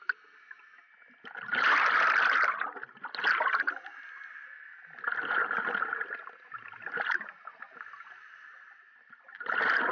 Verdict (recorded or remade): recorded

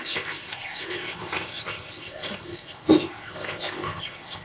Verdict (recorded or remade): remade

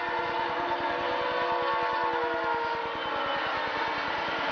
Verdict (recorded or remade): recorded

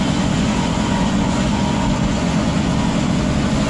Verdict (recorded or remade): remade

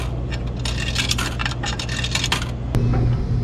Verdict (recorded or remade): recorded